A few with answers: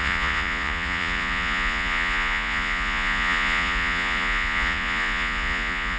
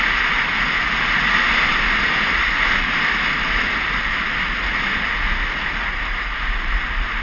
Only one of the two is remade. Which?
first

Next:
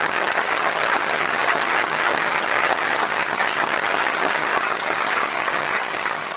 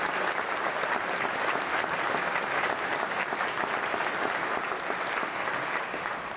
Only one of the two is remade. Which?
first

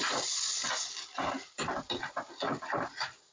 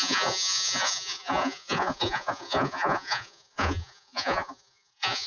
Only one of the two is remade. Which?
second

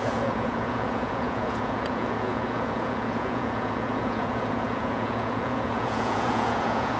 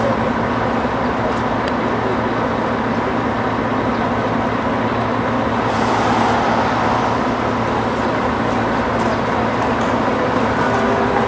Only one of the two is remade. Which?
first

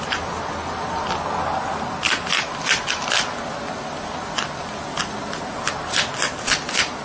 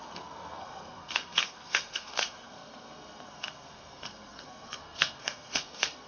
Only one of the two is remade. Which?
second